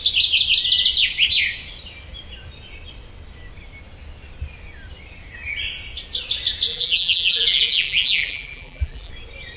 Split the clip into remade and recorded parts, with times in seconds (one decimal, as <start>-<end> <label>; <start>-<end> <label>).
0.0-6.7 recorded; 6.7-9.1 remade; 9.1-9.6 recorded